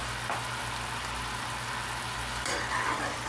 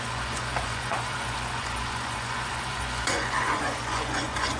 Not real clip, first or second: second